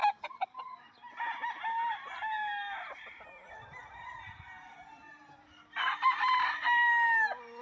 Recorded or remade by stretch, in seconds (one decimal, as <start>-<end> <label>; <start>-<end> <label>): 0.0-7.6 recorded